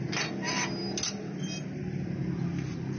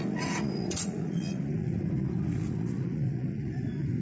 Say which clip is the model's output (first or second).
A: second